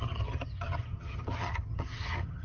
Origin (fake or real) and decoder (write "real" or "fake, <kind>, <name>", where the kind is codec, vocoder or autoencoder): fake, vocoder, HiFi-GAN